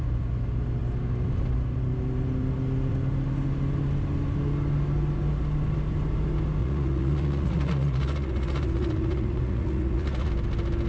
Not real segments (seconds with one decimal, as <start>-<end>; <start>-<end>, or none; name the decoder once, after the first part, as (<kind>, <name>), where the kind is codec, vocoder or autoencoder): 6.6-10.3 (vocoder, Vocos)